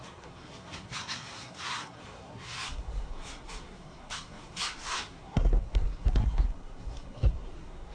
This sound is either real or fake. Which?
fake